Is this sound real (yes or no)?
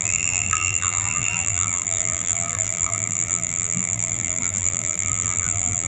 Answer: no